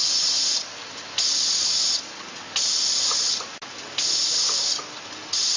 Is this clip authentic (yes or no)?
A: yes